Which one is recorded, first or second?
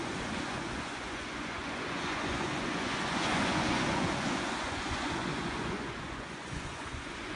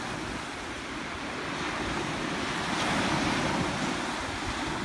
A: second